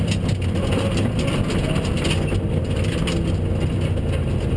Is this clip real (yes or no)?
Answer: yes